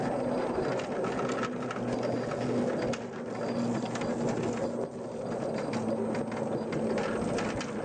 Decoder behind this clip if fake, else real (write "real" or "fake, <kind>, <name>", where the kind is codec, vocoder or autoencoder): real